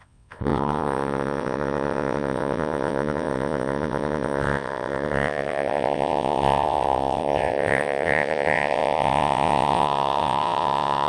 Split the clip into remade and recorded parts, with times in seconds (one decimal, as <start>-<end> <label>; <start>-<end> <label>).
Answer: 0.0-11.1 remade